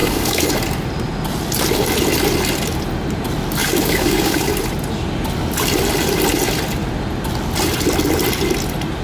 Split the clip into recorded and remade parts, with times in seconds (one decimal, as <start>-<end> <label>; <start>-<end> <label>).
0.0-0.5 remade; 0.5-3.6 recorded; 3.6-4.5 remade; 4.5-9.0 recorded